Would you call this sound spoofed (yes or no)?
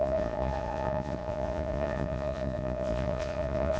yes